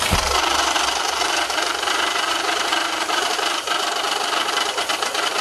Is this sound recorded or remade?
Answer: remade